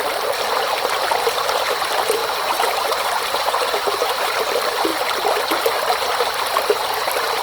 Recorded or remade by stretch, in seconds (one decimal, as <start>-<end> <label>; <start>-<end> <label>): 0.0-2.2 recorded; 2.2-4.4 remade; 4.4-7.4 recorded